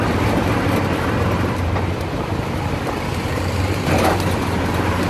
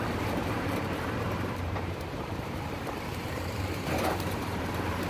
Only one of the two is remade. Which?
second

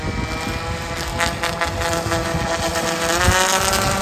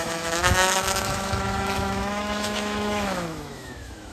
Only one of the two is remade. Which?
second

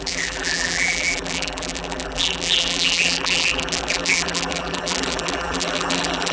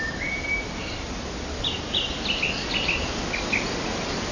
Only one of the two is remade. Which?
first